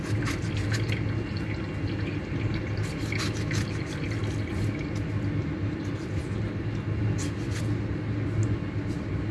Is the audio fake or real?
real